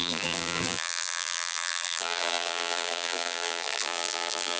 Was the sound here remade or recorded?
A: remade